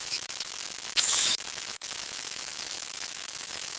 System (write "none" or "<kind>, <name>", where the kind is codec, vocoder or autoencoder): autoencoder, DAC-VAE